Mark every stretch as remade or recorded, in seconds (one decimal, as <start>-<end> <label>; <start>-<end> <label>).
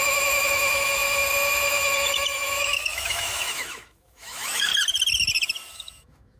0.0-4.7 remade; 4.7-5.7 recorded; 5.7-6.4 remade